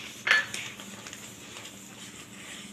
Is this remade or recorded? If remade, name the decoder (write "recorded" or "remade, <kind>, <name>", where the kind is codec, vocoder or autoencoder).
recorded